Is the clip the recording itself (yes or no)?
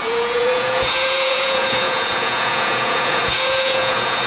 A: no